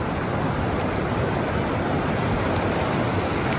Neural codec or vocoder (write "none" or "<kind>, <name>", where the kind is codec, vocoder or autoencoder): none